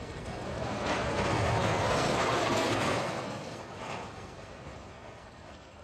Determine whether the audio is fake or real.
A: fake